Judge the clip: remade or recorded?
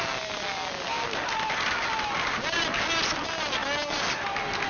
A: recorded